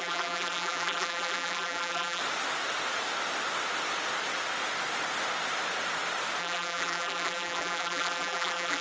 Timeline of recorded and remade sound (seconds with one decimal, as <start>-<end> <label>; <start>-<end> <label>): 0.0-2.2 remade; 2.2-6.4 recorded; 6.4-8.8 remade